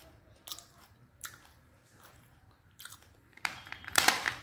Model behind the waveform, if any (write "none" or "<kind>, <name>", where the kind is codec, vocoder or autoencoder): vocoder, BigVGAN v2